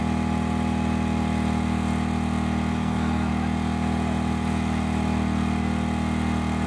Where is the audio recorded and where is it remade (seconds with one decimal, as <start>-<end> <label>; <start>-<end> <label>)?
0.0-2.7 recorded; 2.7-3.3 remade; 3.3-6.7 recorded